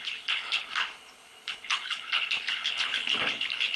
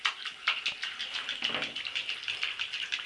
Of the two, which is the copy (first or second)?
first